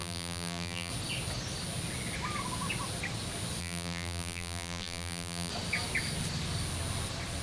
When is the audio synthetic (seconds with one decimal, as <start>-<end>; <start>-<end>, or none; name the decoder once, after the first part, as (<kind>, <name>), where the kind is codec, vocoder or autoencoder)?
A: 0.0-0.9 (vocoder, BigVGAN v2); 3.6-5.5